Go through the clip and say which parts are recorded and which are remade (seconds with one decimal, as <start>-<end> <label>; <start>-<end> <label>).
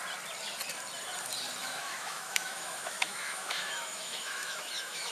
0.0-1.6 recorded; 1.6-5.1 remade